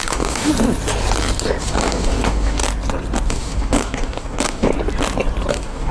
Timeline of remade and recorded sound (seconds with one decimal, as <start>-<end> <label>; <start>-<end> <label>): 0.0-0.5 remade; 0.5-1.6 recorded; 1.6-2.6 remade; 2.6-3.3 recorded; 3.3-4.7 remade; 4.7-5.5 recorded; 5.5-5.9 remade